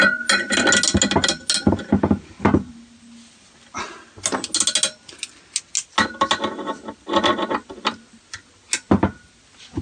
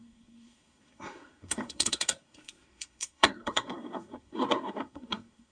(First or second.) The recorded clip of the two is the first